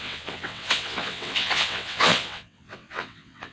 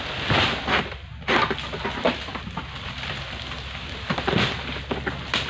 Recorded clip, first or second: second